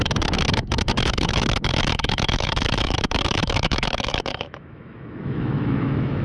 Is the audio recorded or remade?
remade